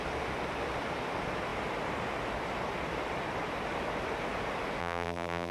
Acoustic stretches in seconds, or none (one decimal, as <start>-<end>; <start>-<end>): 0.0-4.8